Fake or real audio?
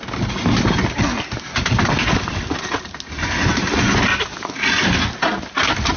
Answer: real